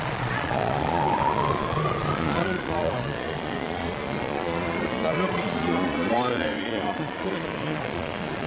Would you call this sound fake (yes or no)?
yes